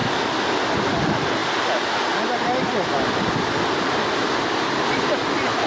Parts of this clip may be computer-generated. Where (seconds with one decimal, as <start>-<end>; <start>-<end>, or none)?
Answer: none